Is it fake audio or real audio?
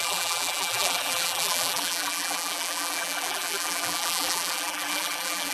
fake